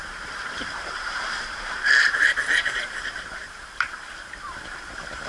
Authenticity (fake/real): fake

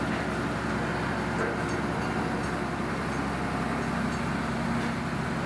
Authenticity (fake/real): real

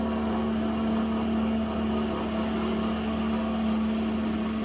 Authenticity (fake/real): real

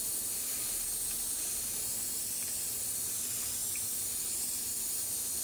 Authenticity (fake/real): real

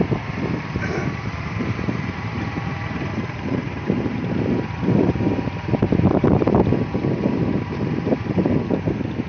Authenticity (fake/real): fake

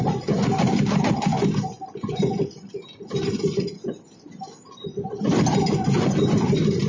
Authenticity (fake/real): real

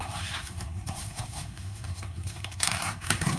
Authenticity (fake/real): fake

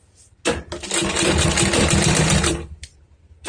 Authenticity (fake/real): real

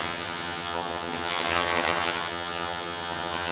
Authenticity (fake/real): fake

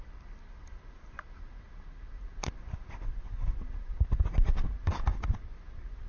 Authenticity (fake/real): fake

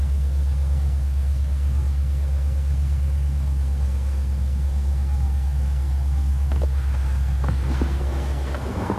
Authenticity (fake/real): fake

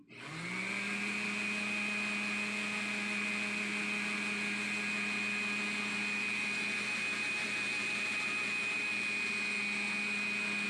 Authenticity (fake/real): real